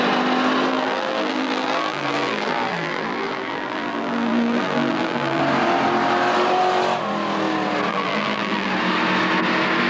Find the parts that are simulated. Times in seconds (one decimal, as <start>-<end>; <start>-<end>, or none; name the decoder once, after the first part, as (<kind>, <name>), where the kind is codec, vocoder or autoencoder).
0.7-5.4 (vocoder, BigVGAN v2); 7.9-8.7